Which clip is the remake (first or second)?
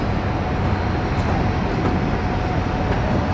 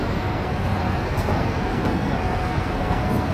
second